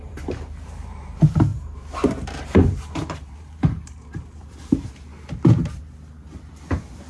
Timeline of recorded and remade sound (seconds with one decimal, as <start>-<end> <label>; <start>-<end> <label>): 0.0-5.1 remade; 5.1-7.1 recorded